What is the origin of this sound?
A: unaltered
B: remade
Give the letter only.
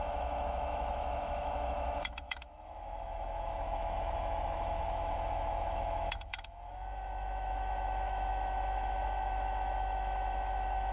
B